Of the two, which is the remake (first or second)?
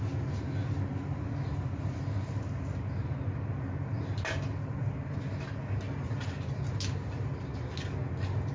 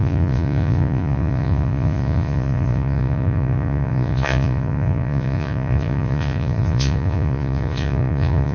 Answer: second